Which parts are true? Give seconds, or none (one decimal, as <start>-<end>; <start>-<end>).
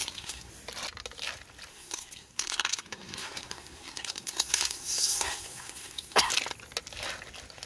0.5-1.7; 6.3-7.7